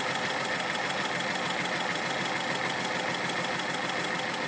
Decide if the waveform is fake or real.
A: real